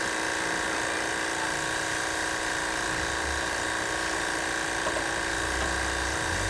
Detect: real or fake real